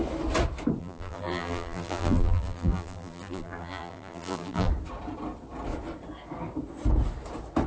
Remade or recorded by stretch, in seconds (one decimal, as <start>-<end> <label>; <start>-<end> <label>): 0.0-0.8 recorded; 0.8-4.7 remade; 4.7-7.7 recorded